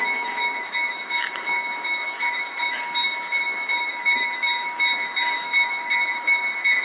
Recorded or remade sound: remade